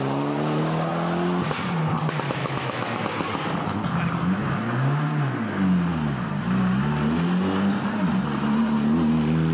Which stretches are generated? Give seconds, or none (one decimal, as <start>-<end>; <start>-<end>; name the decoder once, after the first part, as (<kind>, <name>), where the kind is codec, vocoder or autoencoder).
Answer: 2.4-3.0 (autoencoder, DAC-VAE)

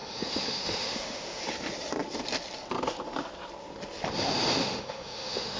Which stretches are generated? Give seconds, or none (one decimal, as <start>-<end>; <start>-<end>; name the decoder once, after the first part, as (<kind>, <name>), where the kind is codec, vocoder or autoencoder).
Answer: 0.0-1.4 (autoencoder, DAC-VAE); 4.6-5.6

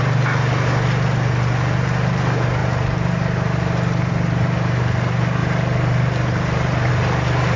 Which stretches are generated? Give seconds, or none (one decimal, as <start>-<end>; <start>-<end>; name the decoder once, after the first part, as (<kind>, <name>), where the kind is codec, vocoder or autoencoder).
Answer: none